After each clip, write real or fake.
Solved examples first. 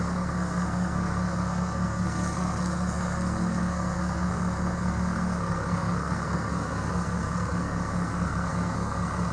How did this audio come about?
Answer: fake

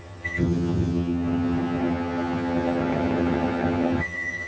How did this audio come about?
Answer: fake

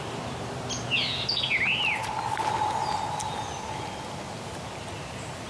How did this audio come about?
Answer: real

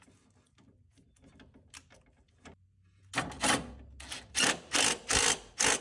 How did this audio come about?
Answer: real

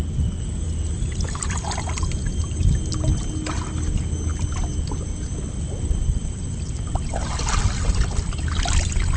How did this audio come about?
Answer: real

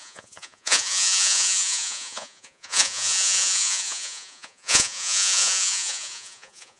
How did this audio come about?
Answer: fake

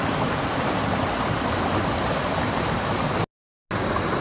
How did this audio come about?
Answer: real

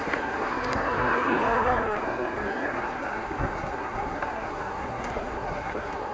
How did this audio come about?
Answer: fake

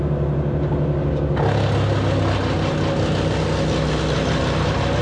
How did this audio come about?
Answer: real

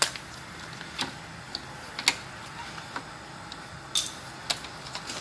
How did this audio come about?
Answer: real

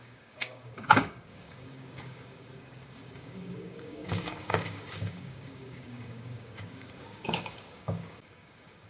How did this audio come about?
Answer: fake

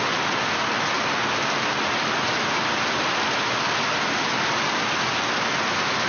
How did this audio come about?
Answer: real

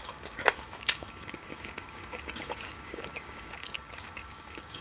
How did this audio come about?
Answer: fake